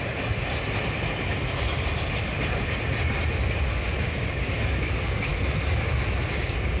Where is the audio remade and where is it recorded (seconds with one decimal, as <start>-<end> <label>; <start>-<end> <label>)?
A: 0.0-4.0 recorded; 4.0-5.3 remade; 5.3-6.3 recorded; 6.3-6.8 remade

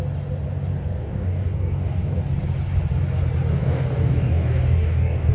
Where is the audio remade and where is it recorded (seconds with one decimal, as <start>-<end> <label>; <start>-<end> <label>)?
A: 0.0-1.0 recorded; 1.0-2.2 remade; 2.2-3.5 recorded; 3.5-5.3 remade

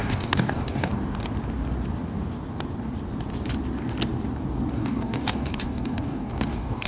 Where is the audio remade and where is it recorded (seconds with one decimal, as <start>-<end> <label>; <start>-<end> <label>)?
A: 0.0-0.9 remade; 0.9-4.7 recorded; 4.7-6.9 remade